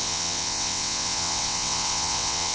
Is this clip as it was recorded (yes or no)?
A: no